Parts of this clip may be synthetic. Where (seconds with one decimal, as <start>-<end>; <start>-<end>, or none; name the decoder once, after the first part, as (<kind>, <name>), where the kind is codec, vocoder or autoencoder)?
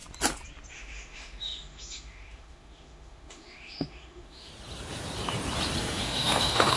0.7-4.5 (autoencoder, DAC-VAE); 5.8-6.8